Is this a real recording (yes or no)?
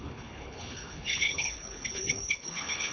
no